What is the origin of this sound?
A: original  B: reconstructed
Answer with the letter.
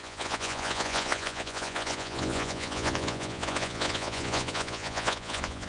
B